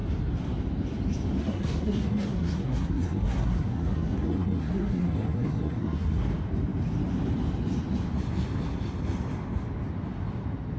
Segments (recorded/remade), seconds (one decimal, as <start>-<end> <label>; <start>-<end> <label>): 0.0-1.4 recorded; 1.4-6.2 remade; 6.2-10.8 recorded